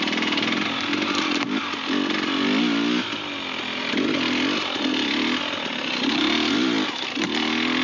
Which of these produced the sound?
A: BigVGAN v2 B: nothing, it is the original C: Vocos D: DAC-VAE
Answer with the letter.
B